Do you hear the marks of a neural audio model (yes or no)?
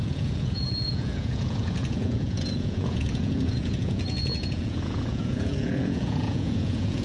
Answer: yes